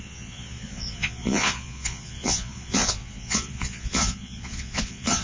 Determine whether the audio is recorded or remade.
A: remade